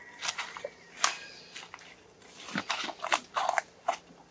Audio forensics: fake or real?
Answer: real